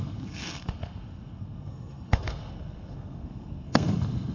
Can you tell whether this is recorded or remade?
remade